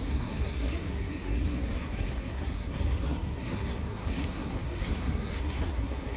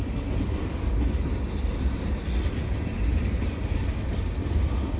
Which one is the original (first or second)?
second